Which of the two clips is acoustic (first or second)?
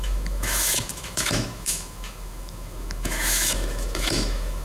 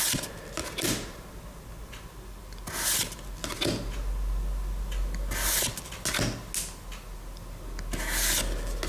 second